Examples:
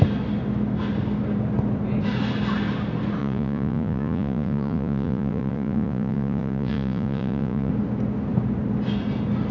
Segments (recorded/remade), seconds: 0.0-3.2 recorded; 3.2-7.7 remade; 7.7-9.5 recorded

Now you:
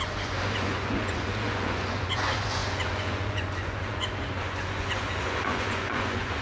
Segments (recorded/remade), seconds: 0.0-6.4 remade